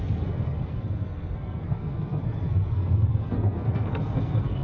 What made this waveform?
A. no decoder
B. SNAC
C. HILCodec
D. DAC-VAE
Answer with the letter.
B